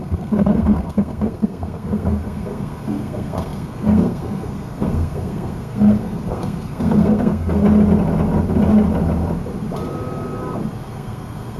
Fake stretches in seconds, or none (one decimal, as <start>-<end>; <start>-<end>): 0.0-7.6; 10.8-11.6